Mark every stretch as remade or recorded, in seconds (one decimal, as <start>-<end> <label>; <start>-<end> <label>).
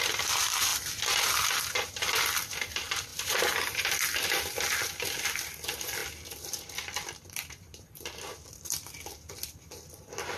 0.0-10.4 remade